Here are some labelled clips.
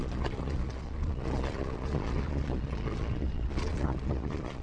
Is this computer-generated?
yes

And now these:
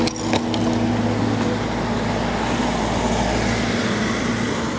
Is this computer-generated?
no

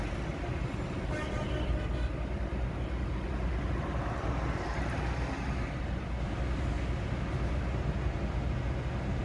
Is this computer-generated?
no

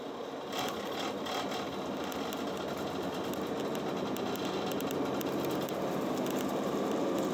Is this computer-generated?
no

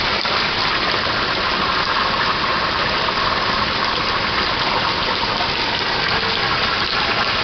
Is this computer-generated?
no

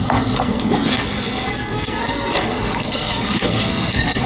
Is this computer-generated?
yes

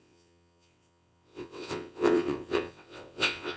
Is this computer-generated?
yes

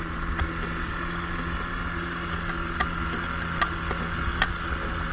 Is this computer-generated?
no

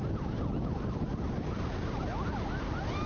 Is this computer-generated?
no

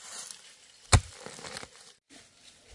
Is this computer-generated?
no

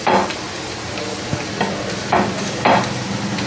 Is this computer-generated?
no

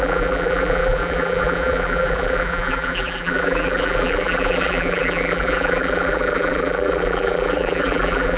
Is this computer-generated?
yes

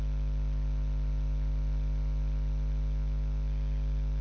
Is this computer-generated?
no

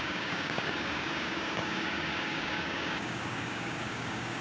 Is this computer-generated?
yes